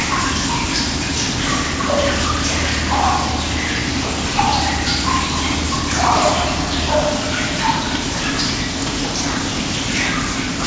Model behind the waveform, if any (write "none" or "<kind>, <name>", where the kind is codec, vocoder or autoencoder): none